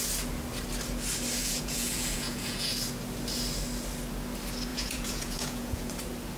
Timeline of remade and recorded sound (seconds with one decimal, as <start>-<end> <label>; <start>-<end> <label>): 0.0-1.4 recorded; 1.4-2.7 remade; 2.7-4.7 recorded; 4.7-5.9 remade; 5.9-6.4 recorded